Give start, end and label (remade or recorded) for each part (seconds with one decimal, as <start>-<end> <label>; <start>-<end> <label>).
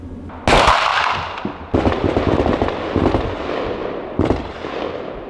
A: 0.0-5.3 recorded